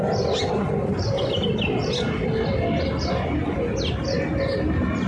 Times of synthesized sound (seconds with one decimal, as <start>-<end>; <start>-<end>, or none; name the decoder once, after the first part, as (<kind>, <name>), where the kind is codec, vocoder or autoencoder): 0.8-1.3 (vocoder, BigVGAN v2)